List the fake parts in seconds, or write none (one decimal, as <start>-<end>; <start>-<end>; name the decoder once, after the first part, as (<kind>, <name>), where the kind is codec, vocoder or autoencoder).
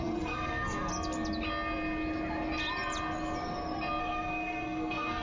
0.0-0.9 (codec, SNAC); 4.0-5.2